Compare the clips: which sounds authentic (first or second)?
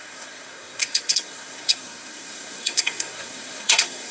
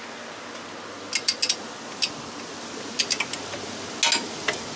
second